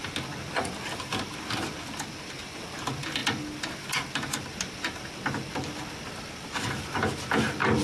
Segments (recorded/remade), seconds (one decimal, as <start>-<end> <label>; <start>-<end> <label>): 0.0-7.8 recorded